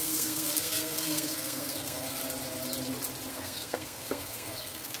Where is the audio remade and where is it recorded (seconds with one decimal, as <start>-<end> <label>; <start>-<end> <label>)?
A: 0.0-2.2 remade; 2.2-3.3 recorded; 3.3-5.0 remade